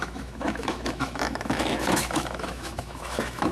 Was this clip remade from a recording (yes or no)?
yes